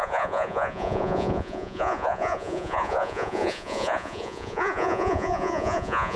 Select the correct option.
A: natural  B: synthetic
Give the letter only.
B